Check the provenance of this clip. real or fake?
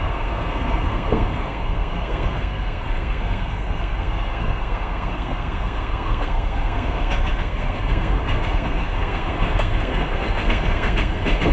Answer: fake